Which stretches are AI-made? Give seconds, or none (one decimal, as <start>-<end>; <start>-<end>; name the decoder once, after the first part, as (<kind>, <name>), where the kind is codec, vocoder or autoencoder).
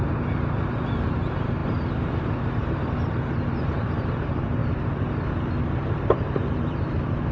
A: 0.0-4.6 (vocoder, BigVGAN v2); 5.6-7.3